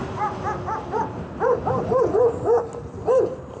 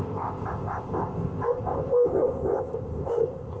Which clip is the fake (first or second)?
second